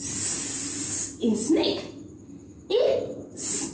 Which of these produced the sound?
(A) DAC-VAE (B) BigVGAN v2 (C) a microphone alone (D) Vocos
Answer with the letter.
C